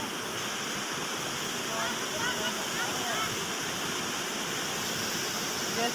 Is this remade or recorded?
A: recorded